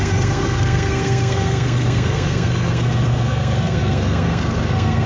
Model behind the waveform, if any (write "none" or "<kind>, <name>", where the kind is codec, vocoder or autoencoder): codec, SNAC